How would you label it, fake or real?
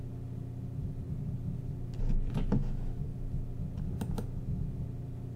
real